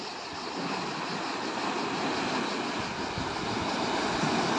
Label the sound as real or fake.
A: real